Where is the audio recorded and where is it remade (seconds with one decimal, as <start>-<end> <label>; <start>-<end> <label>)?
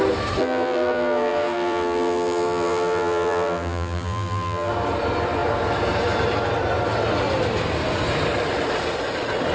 0.0-0.4 recorded; 0.4-4.7 remade; 4.7-9.5 recorded